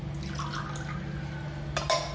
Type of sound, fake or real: real